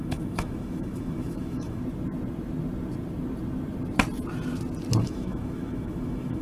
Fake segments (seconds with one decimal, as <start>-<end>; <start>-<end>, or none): 0.0-1.8; 5.0-6.4